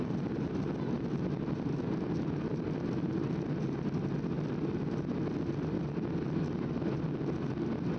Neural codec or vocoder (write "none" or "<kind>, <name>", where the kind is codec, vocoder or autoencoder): none